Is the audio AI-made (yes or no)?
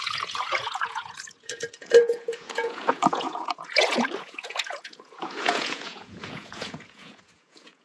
yes